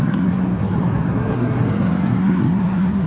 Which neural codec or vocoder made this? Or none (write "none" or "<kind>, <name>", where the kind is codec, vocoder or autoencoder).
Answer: codec, SNAC